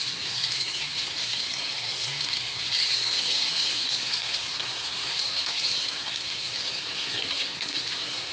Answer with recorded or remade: remade